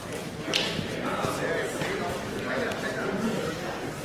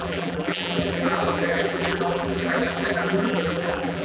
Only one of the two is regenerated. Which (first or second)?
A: second